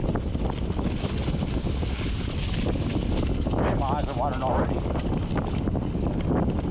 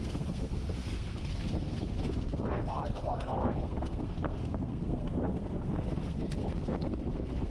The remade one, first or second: second